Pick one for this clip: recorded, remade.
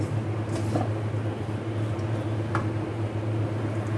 recorded